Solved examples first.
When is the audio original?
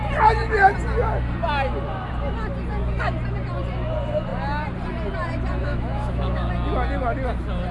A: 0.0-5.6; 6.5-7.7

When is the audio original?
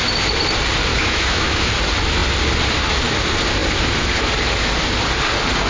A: 0.0-0.9; 1.7-5.7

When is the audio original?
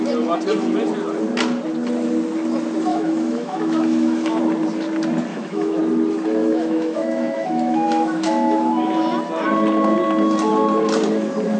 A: 0.0-2.9; 4.4-5.3; 5.8-6.4; 8.9-11.6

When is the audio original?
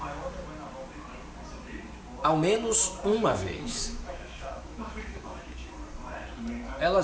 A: 0.0-3.1; 5.7-7.0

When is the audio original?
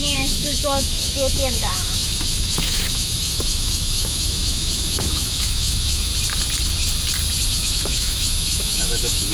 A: 6.1-7.5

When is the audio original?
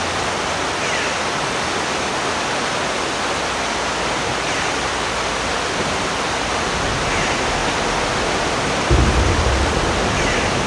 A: 0.0-10.7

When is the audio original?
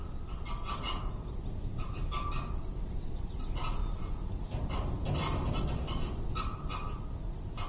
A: 0.0-7.7